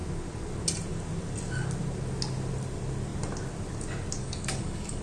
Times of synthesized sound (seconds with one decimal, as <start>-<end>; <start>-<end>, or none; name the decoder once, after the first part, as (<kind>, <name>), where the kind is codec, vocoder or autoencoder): 4.2-5.0 (codec, DAC)